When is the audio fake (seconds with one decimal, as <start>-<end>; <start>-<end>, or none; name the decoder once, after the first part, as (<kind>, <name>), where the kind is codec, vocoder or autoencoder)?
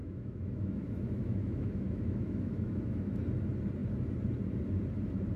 0.0-3.2 (autoencoder, DAC-VAE)